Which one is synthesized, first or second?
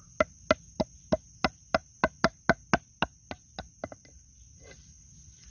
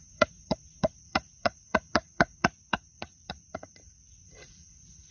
second